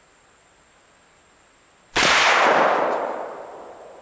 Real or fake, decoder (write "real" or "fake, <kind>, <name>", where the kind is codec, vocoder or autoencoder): real